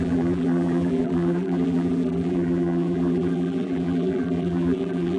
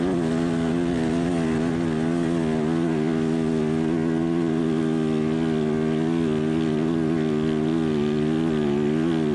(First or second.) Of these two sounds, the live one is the second